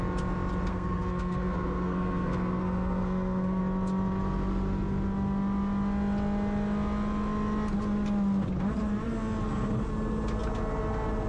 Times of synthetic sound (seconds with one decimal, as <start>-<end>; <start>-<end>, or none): 0.7-3.6